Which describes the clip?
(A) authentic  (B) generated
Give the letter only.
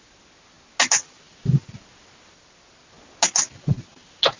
A